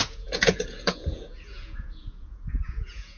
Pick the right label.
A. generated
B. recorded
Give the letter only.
A